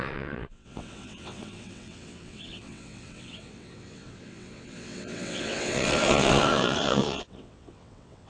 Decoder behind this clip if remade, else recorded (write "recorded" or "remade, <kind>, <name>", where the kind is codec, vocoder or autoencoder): remade, vocoder, WaveNeXt